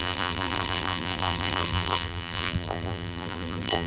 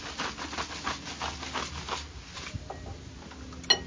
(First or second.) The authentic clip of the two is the second